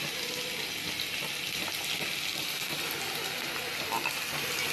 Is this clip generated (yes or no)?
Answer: no